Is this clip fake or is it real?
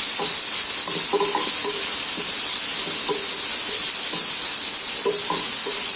real